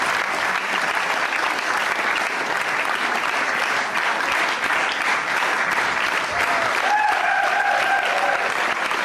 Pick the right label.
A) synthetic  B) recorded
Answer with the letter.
B